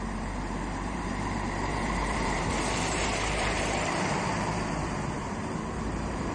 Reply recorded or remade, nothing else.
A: remade